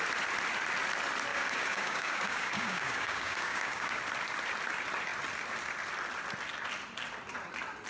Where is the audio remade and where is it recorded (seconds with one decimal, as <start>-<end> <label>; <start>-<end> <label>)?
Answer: 0.0-1.3 recorded; 1.3-4.0 remade; 4.0-7.9 recorded